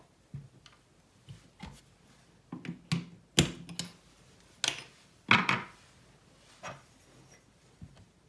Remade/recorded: recorded